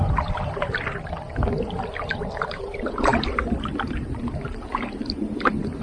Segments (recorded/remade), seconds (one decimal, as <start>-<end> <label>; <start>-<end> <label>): 0.0-5.8 recorded